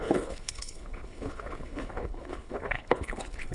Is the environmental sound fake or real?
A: fake